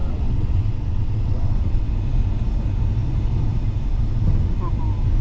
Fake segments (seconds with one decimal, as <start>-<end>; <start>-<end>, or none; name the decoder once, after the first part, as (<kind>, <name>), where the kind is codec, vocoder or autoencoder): 0.0-1.9 (vocoder, WaveNeXt)